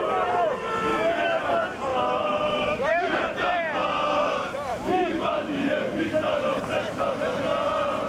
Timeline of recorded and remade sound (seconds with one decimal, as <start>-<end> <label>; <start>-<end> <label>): 0.0-0.9 recorded; 0.9-1.4 remade; 1.4-1.9 recorded; 1.9-3.2 remade; 3.2-4.7 recorded; 4.7-6.6 remade; 6.6-8.1 recorded